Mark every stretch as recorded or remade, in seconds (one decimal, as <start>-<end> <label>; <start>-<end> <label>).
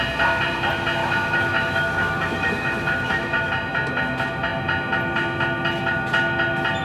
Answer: 0.0-1.0 recorded; 1.0-3.5 remade; 3.5-6.8 recorded